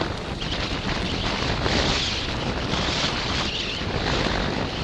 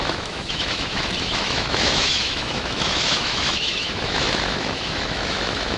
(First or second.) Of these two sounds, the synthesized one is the second